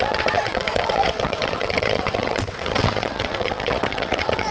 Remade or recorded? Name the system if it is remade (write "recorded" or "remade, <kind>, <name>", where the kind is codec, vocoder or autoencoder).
remade, vocoder, WaveNeXt